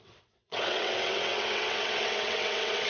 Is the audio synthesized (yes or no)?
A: yes